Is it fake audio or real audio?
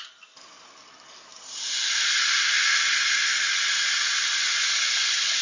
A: real